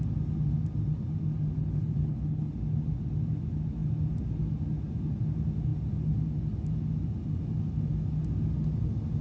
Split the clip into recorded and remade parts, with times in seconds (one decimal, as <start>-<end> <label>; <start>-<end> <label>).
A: 0.0-1.6 recorded; 1.6-2.5 remade; 2.5-9.2 recorded